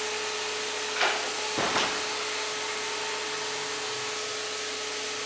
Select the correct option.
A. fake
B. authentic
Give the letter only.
B